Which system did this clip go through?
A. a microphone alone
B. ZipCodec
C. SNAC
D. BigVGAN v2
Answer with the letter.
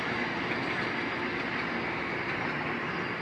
A